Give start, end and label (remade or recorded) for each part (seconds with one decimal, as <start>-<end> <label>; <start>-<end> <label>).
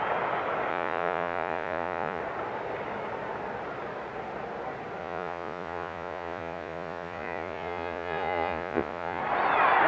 0.0-0.7 recorded; 0.7-2.2 remade; 2.2-5.0 recorded; 5.0-9.2 remade; 9.2-9.9 recorded